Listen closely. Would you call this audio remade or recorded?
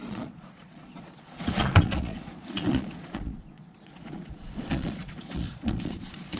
remade